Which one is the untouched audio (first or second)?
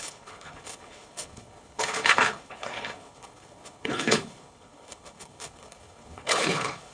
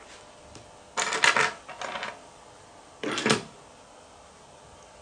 second